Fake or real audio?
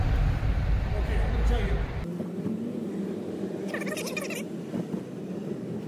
real